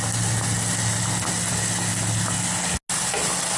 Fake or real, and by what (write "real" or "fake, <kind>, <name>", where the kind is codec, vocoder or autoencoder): real